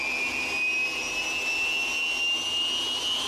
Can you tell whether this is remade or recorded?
recorded